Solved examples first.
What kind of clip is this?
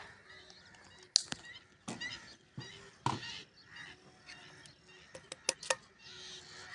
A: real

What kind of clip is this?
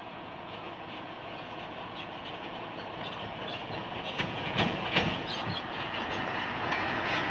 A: fake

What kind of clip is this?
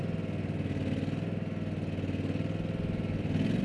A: real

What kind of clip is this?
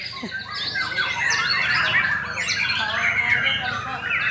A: real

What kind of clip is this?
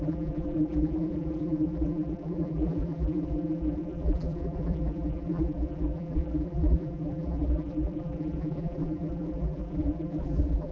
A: fake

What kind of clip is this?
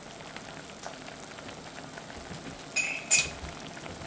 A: real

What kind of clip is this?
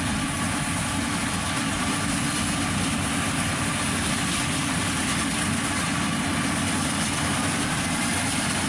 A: real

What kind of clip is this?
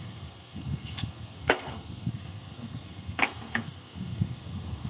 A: fake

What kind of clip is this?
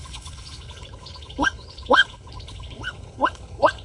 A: fake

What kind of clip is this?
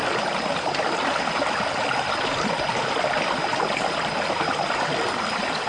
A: fake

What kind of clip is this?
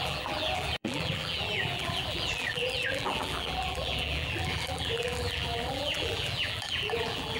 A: fake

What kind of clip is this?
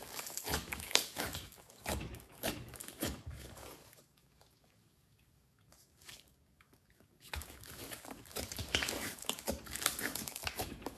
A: fake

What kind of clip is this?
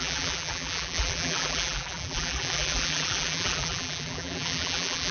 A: fake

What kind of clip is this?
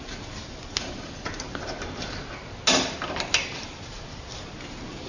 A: real